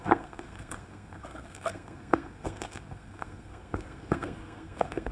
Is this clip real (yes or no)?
no